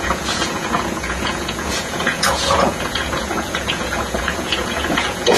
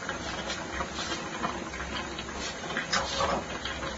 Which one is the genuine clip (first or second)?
second